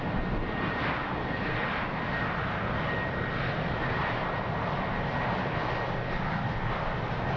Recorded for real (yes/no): yes